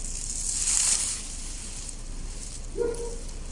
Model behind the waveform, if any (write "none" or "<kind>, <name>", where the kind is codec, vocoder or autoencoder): none